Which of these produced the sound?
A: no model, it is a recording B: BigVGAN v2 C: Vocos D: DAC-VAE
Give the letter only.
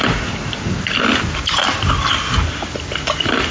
A